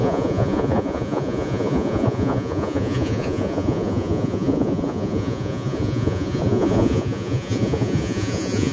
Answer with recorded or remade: remade